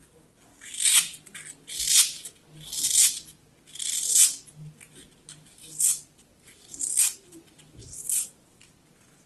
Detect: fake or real real